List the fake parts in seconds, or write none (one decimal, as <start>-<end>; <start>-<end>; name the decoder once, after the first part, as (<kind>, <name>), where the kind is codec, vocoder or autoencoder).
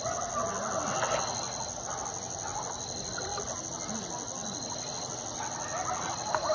none